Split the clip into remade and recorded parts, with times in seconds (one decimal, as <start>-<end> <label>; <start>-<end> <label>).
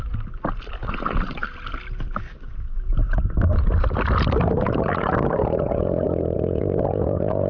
0.0-7.5 recorded